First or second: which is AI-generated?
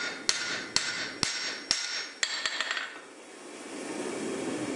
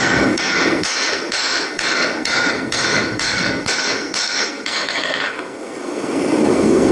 second